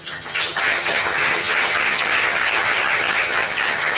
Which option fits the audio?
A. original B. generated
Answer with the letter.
B